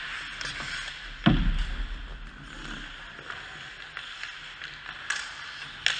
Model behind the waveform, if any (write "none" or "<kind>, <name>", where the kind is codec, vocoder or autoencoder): none